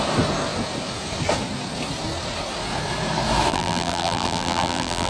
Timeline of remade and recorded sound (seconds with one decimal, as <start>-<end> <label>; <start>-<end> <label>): 0.0-3.5 recorded; 3.5-5.1 remade